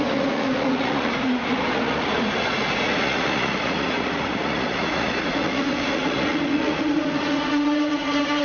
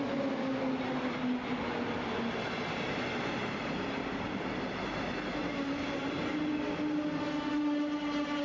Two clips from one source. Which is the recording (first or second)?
second